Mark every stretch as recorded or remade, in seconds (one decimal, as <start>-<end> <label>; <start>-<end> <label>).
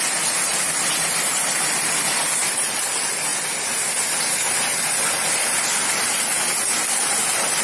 0.0-3.3 remade; 3.3-7.6 recorded